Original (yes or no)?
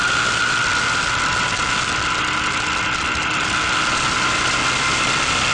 yes